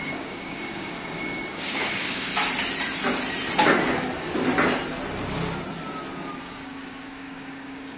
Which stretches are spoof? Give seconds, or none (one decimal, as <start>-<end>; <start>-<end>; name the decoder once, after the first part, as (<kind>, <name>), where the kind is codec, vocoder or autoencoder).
0.0-2.3 (codec, DAC); 6.4-8.0